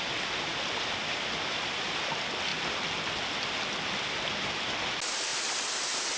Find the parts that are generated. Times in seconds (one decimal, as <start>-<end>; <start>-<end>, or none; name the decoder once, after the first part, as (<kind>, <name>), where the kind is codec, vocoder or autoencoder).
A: none